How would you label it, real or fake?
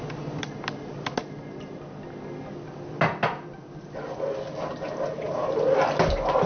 real